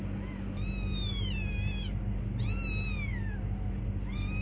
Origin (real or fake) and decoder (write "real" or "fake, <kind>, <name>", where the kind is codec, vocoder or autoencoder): real